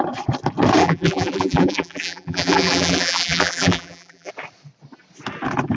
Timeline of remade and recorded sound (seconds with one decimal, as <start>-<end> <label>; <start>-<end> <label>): 0.0-0.8 recorded; 0.8-4.3 remade; 4.3-5.8 recorded